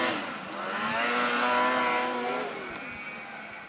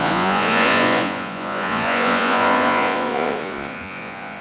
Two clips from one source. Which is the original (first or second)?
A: first